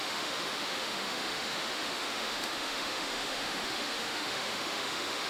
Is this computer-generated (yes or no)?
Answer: yes